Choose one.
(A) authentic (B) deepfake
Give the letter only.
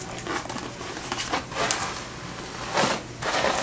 A